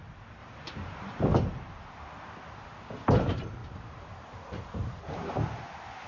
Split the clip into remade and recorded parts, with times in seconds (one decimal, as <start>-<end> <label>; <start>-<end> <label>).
0.0-0.4 recorded; 0.4-1.3 remade; 1.3-3.6 recorded; 3.6-5.3 remade; 5.3-6.1 recorded